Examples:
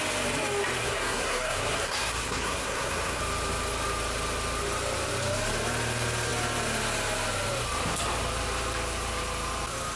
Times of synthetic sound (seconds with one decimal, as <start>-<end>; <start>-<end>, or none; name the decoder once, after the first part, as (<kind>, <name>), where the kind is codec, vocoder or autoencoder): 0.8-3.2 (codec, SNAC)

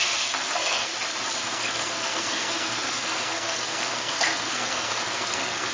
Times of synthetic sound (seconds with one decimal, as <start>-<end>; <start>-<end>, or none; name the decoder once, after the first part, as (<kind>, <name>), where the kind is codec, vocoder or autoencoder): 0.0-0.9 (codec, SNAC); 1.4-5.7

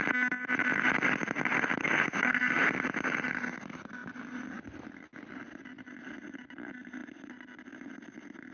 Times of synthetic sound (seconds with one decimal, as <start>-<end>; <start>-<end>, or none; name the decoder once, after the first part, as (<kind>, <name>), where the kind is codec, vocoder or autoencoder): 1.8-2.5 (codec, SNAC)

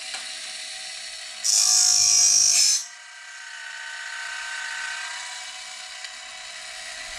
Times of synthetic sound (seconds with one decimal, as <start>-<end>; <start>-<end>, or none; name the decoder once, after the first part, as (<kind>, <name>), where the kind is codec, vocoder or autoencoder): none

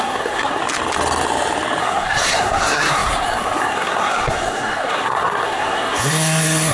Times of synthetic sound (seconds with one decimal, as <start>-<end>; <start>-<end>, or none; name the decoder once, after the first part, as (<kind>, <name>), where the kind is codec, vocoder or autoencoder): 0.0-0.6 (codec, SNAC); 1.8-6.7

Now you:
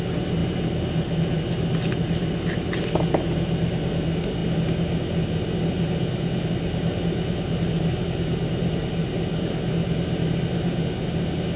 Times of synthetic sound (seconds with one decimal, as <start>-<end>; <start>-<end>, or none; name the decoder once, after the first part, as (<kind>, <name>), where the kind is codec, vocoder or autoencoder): none

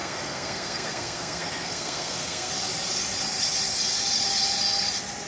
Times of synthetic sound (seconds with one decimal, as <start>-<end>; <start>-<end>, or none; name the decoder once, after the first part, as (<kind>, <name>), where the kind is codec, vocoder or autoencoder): 0.0-2.5 (codec, SNAC)